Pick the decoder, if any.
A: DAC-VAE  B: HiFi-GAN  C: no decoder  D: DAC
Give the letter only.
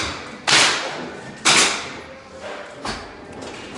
C